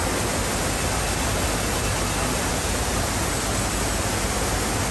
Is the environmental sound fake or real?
real